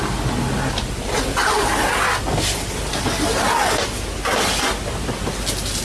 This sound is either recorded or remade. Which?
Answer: recorded